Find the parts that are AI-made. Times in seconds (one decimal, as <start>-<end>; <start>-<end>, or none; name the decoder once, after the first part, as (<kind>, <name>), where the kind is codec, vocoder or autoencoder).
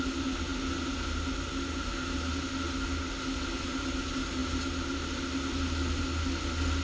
none